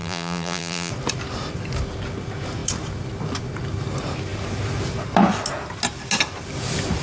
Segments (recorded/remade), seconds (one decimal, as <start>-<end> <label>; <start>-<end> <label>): 0.0-0.9 remade; 0.9-7.0 recorded